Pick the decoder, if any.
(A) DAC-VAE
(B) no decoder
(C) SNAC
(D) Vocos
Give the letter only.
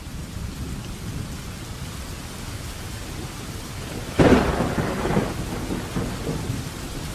B